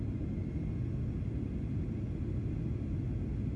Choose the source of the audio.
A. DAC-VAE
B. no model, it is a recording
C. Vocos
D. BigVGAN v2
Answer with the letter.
B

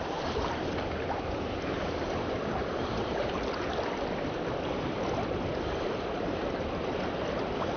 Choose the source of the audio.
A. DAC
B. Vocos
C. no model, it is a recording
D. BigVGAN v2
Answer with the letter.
D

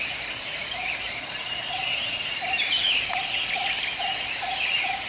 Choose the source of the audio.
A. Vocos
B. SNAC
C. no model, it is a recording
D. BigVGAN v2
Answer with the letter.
D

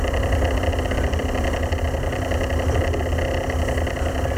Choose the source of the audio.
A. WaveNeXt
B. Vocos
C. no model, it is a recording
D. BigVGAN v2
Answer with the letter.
C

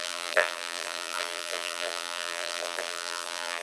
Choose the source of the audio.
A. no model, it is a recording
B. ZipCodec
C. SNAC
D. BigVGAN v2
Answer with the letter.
D